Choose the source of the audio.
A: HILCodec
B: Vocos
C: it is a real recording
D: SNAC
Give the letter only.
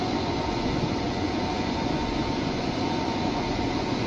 B